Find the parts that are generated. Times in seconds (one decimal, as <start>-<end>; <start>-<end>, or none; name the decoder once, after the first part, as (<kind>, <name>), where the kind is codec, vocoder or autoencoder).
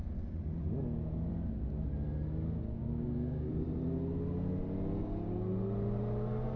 2.6-3.5 (codec, DAC)